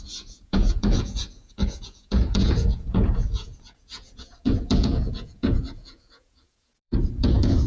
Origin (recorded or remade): remade